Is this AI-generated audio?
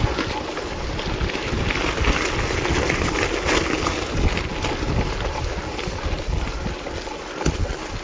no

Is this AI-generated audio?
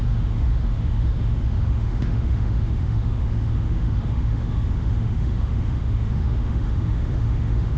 yes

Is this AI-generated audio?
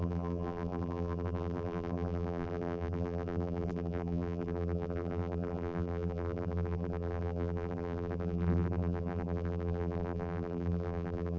yes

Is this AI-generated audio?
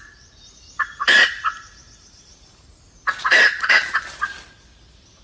no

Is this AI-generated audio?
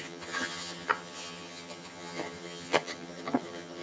yes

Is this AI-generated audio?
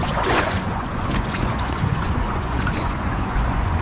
yes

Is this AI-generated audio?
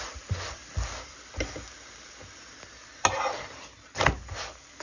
no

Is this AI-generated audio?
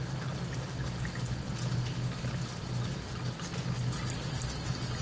no